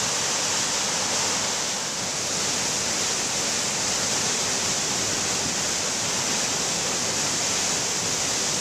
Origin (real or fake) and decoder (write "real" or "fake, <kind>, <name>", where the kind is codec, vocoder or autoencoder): real